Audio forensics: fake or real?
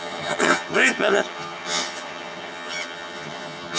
fake